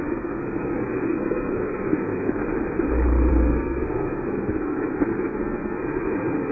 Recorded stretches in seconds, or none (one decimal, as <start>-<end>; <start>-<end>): 2.4-3.3